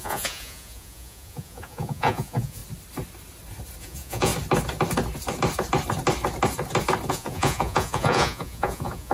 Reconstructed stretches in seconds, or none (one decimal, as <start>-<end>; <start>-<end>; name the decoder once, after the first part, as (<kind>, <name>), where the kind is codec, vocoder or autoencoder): 0.0-2.6 (vocoder, Vocos); 3.8-4.3; 7.1-9.1